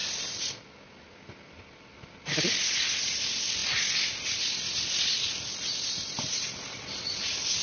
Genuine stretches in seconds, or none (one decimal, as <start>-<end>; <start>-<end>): 0.0-7.6